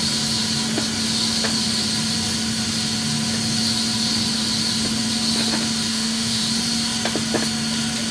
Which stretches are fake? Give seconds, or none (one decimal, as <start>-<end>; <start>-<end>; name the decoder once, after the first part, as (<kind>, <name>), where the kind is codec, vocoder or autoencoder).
5.9-6.4 (autoencoder, DAC-VAE)